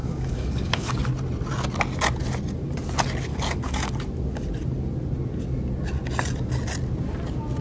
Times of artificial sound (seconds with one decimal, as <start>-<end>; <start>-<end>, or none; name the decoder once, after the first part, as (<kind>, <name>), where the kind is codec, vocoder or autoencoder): 0.0-0.9 (codec, DAC); 3.3-3.9